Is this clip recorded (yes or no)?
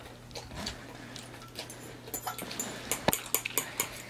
yes